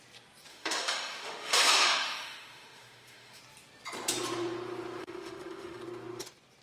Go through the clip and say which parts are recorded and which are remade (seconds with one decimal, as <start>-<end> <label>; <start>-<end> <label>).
0.0-0.5 recorded; 0.5-3.4 remade; 3.4-5.0 recorded; 5.0-5.8 remade; 5.8-6.6 recorded